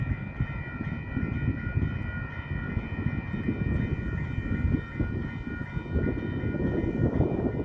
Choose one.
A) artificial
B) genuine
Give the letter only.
B